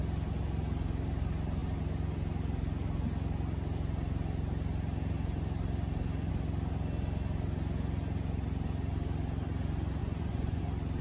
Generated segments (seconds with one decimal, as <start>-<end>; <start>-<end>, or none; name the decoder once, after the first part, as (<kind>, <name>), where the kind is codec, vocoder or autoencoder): 10.0-10.6 (vocoder, Vocos)